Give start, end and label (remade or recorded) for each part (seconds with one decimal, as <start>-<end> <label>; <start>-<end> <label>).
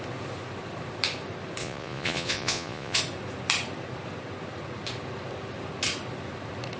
0.0-1.6 recorded; 1.6-3.0 remade; 3.0-6.8 recorded